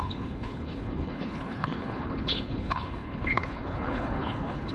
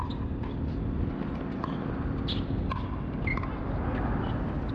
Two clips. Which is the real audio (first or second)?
second